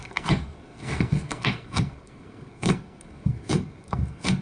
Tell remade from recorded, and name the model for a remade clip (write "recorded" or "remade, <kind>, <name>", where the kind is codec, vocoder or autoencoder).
remade, codec, SNAC